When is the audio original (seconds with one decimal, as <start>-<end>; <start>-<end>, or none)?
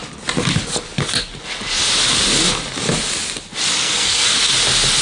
0.0-3.8; 4.5-5.0